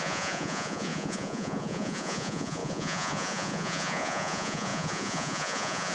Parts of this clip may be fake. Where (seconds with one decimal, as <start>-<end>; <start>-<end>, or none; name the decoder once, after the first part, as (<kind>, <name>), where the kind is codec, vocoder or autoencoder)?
0.0-5.9 (vocoder, Vocos)